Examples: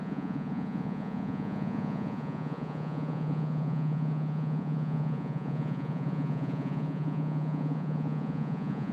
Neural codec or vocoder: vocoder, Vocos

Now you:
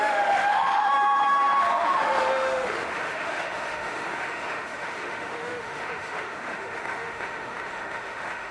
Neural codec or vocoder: autoencoder, DAC-VAE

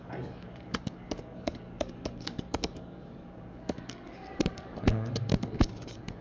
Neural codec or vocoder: codec, DAC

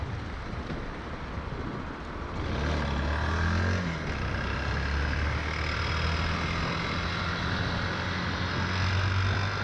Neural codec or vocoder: none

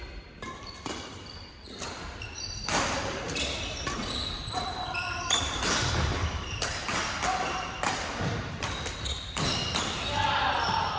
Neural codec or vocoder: vocoder, BigVGAN v2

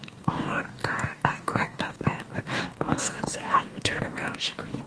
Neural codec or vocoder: codec, DAC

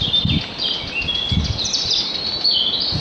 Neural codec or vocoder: none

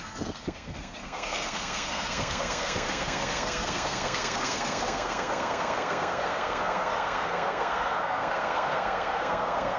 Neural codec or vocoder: codec, SNAC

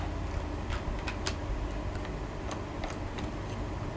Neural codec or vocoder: none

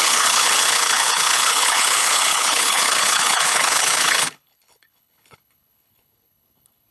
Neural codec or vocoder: codec, HILCodec